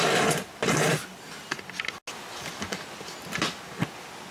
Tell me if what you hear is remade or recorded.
recorded